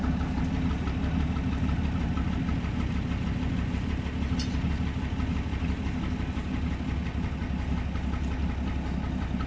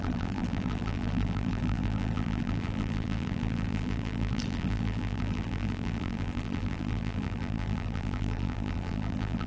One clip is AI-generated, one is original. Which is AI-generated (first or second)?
second